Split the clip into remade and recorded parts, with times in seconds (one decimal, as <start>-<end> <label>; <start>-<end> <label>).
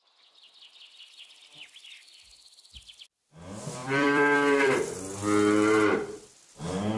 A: 0.0-3.8 recorded; 3.8-6.3 remade; 6.3-7.0 recorded